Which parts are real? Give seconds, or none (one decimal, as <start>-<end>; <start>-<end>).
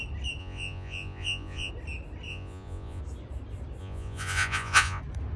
0.0-0.4; 1.7-2.3; 3.0-3.8; 5.0-5.4